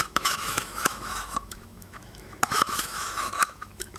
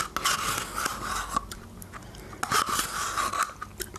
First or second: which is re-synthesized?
first